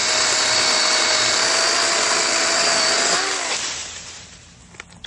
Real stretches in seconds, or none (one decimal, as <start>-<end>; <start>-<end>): 0.0-3.8; 4.5-5.1